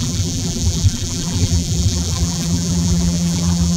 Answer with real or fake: fake